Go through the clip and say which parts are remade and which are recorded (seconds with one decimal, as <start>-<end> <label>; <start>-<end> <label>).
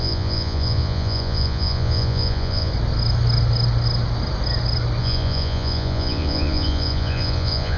0.0-2.7 remade; 2.7-5.0 recorded; 5.0-7.8 remade